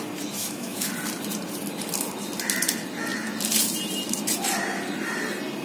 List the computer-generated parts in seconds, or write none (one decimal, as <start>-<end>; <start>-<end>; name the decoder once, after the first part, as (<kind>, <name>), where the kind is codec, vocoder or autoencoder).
0.4-0.9 (autoencoder, DAC-VAE)